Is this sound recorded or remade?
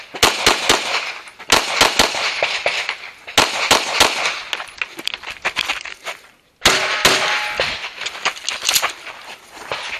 recorded